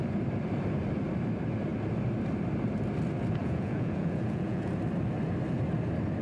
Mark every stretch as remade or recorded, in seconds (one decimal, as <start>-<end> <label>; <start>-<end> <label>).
0.0-3.4 recorded; 3.4-4.7 remade; 4.7-6.2 recorded